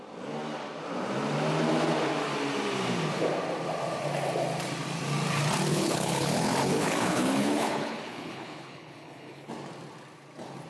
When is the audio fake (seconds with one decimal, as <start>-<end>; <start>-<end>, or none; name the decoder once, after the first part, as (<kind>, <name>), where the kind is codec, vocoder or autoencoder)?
5.7-9.5 (codec, HILCodec)